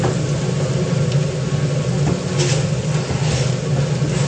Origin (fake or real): real